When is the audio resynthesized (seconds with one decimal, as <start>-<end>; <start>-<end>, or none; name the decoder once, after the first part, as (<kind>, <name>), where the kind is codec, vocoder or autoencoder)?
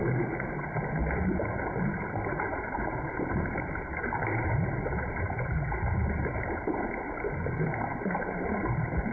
1.9-6.9 (vocoder, BigVGAN v2); 7.9-9.1